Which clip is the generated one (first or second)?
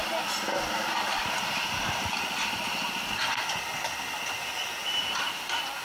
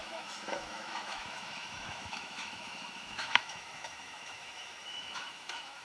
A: second